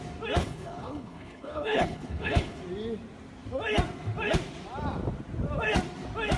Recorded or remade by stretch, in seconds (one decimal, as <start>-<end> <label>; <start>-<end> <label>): 0.0-0.4 recorded; 0.4-2.6 remade; 2.6-6.4 recorded